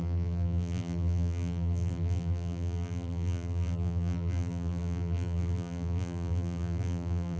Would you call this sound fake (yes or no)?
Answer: yes